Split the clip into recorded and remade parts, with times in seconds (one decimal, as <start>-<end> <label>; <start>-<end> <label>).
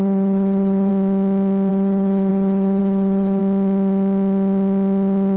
0.0-0.9 remade; 0.9-1.7 recorded; 1.7-3.4 remade; 3.4-5.4 recorded